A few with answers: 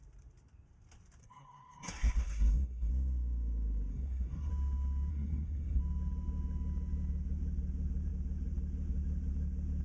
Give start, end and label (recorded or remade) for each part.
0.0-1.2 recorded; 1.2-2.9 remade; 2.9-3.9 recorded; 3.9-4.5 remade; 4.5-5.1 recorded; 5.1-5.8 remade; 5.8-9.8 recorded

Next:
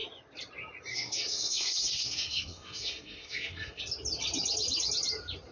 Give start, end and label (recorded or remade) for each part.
0.0-0.9 recorded; 0.9-3.8 remade; 3.8-5.5 recorded

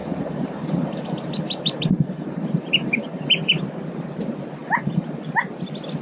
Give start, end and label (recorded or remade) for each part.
0.0-3.6 remade; 3.6-4.6 recorded; 4.6-5.3 remade; 5.3-6.0 recorded

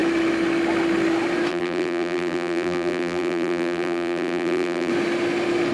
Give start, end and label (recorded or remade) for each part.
0.0-1.5 recorded; 1.5-4.9 remade; 4.9-5.7 recorded

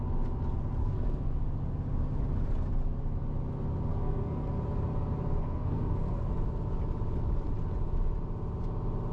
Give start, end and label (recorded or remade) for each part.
0.0-0.8 recorded; 0.8-1.4 remade; 1.4-3.9 recorded; 3.9-4.5 remade; 4.5-5.4 recorded; 5.4-6.3 remade; 6.3-9.1 recorded

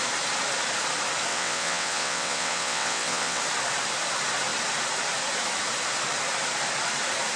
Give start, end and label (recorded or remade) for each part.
0.0-1.3 recorded; 1.3-3.4 remade; 3.4-7.4 recorded

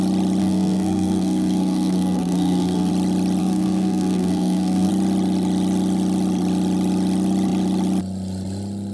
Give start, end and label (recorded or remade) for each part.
0.0-0.4 recorded; 0.4-2.9 remade; 2.9-3.4 recorded; 3.4-4.9 remade; 4.9-8.9 recorded